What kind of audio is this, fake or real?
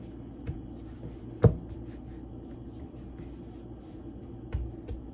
real